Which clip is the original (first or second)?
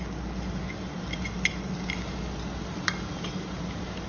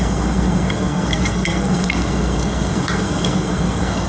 first